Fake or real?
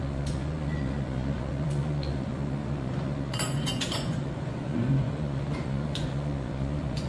fake